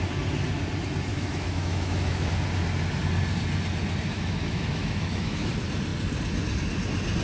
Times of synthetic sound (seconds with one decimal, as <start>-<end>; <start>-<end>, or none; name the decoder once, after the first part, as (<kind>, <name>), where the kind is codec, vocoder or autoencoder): 1.1-2.3 (autoencoder, DAC-VAE); 4.1-5.5